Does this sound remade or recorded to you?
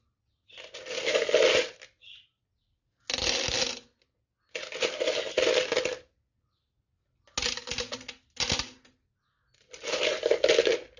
recorded